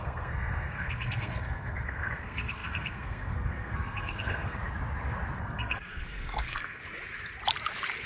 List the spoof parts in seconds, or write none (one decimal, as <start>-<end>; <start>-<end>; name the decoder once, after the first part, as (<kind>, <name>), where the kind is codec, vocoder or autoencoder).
0.0-4.6 (codec, SNAC); 5.4-6.8